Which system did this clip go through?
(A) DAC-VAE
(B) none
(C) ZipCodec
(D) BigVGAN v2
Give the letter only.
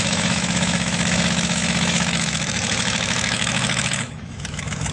A